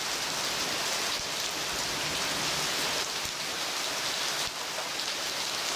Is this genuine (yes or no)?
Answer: yes